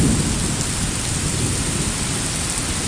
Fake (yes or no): no